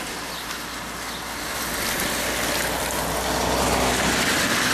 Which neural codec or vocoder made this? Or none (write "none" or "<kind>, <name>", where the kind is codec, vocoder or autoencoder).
none